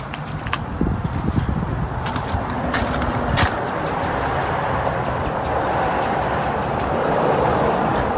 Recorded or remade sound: remade